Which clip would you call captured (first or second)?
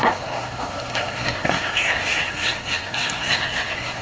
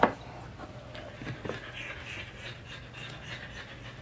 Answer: second